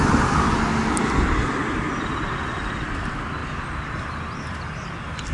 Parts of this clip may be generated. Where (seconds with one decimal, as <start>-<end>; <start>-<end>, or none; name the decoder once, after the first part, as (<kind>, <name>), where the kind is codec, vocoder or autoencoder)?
none